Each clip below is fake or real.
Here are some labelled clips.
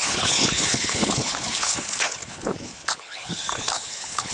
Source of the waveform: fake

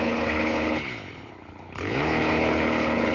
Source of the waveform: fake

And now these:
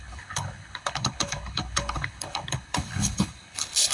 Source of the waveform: fake